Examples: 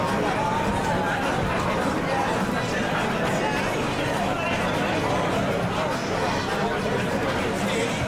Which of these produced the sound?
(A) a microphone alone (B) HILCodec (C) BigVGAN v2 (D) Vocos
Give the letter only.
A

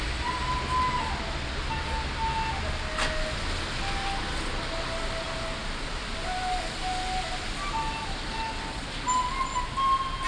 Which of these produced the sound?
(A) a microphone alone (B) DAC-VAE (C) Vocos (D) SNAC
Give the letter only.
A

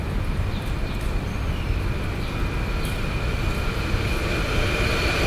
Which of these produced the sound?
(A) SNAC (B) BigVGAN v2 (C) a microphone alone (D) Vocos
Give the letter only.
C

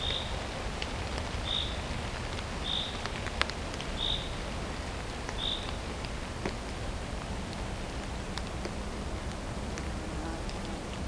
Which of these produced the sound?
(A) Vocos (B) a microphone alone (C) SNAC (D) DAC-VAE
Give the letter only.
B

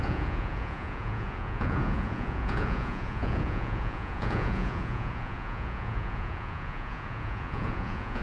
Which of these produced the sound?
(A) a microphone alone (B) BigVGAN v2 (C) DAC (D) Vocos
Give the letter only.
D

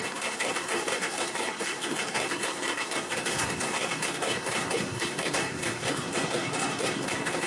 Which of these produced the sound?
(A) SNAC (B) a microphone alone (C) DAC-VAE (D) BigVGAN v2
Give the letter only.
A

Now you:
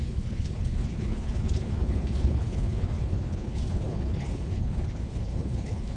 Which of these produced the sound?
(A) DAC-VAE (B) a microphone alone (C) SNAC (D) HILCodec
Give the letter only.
D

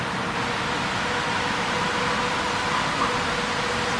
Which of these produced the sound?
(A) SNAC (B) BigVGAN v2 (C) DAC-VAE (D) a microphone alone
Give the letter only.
D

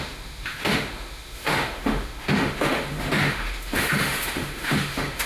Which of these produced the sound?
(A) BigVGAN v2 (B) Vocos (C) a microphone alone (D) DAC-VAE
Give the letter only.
D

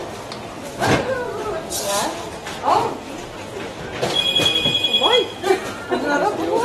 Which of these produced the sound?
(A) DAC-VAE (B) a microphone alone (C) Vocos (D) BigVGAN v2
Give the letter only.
B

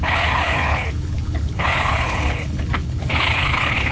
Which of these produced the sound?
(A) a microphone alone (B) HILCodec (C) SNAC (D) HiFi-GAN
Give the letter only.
B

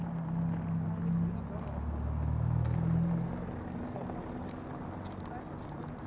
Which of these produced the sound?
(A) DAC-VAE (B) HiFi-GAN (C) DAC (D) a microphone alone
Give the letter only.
D